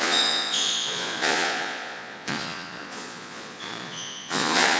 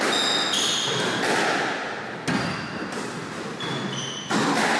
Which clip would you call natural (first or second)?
second